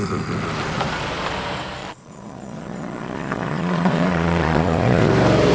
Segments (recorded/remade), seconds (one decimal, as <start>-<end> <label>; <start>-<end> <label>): 0.0-1.8 recorded; 1.8-5.1 remade; 5.1-5.5 recorded